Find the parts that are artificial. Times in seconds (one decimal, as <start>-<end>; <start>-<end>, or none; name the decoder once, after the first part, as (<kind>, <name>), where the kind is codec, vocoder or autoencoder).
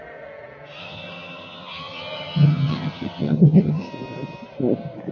0.8-3.9 (vocoder, HiFi-GAN)